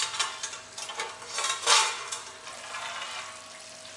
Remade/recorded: recorded